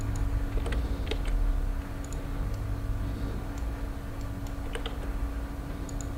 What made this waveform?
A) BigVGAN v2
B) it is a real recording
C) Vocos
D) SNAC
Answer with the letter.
B